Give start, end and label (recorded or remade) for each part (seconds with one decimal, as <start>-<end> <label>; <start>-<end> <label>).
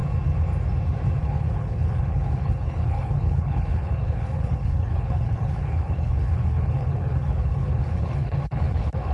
0.0-1.2 recorded; 1.2-9.1 remade